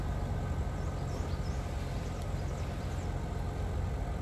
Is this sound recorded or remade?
recorded